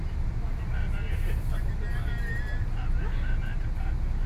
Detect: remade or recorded recorded